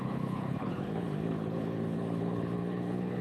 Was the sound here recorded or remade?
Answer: remade